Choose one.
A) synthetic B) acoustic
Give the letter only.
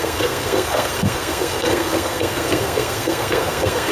A